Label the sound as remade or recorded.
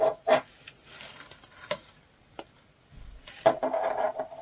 recorded